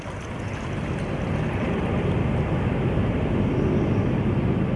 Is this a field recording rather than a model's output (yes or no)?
yes